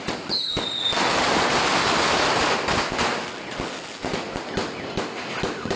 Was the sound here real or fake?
real